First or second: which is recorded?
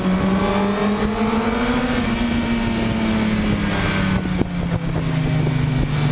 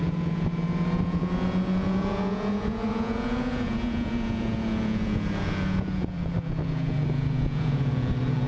first